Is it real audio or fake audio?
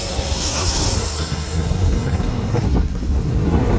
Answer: fake